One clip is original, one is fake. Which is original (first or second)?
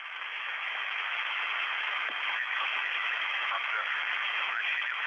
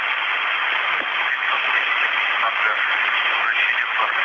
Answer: second